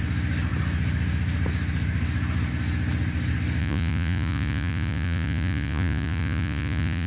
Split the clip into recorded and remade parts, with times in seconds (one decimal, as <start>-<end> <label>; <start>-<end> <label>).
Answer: 0.0-3.6 recorded; 3.6-7.1 remade